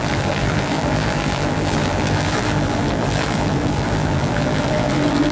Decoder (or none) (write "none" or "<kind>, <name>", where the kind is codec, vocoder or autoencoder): vocoder, BigVGAN v2